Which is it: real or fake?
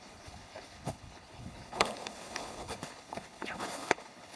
fake